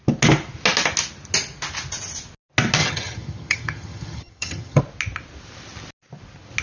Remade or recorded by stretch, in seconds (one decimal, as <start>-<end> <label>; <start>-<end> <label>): 0.0-2.8 recorded; 2.8-4.8 remade; 4.8-6.6 recorded